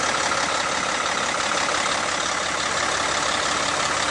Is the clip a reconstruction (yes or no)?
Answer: no